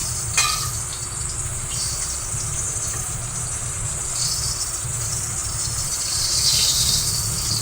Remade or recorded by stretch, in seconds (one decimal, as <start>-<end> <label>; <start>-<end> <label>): 0.0-1.5 recorded; 1.5-4.3 remade; 4.3-5.4 recorded; 5.4-6.3 remade; 6.3-7.6 recorded